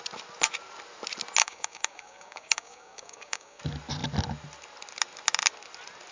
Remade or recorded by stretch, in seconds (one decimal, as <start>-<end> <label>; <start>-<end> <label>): 0.0-1.4 recorded; 1.4-3.6 remade; 3.6-6.1 recorded